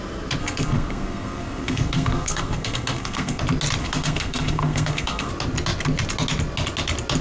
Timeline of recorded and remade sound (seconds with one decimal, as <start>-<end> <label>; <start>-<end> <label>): 0.0-0.4 recorded; 0.4-3.4 remade; 3.4-3.8 recorded; 3.8-5.3 remade; 5.3-7.2 recorded